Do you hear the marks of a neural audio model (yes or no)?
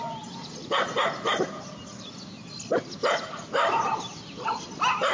no